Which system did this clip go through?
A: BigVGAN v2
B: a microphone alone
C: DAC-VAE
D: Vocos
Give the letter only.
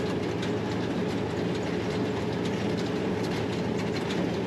B